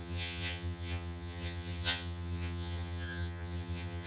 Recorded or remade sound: remade